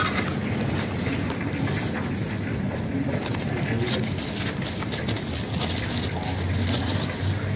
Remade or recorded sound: recorded